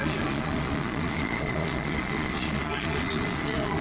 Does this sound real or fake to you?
fake